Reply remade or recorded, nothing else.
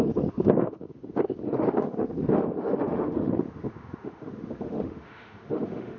remade